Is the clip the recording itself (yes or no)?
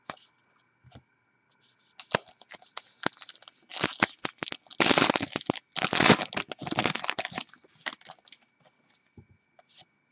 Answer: yes